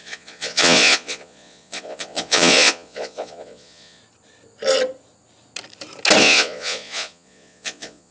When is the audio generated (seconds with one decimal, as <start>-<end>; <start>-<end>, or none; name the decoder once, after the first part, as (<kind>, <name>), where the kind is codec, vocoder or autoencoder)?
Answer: 0.0-4.0 (vocoder, Vocos); 6.2-8.1